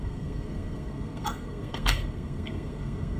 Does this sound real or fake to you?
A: fake